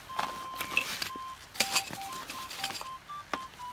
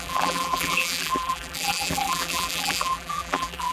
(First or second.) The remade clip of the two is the second